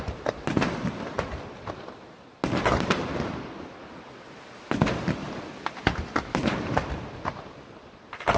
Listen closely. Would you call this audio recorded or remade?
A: recorded